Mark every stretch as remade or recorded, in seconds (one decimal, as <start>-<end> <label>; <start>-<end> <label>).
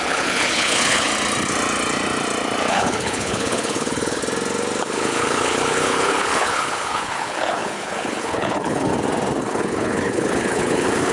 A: 0.0-1.1 remade; 1.1-2.7 recorded; 2.7-4.2 remade; 4.2-4.8 recorded; 4.8-8.9 remade; 8.9-9.4 recorded; 9.4-11.1 remade